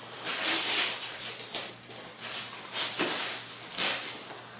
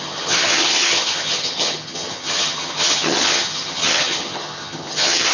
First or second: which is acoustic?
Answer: first